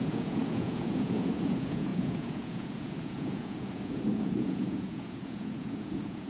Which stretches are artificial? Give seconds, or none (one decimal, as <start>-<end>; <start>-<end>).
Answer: 0.0-6.3